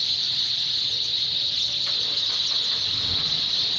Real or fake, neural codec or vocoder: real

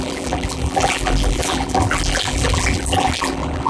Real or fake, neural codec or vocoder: fake, vocoder, BigVGAN v2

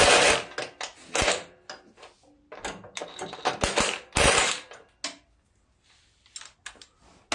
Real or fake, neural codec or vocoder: real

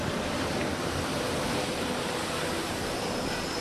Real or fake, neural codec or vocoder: fake, vocoder, BigVGAN v2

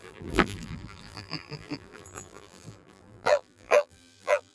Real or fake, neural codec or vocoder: fake, vocoder, BigVGAN v2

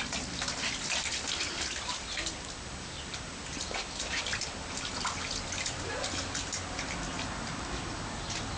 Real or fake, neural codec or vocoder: real